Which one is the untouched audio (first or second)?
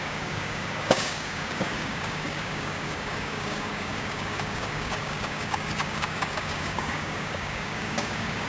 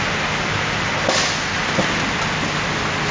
second